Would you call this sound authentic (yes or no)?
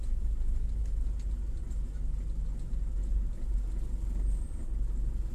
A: yes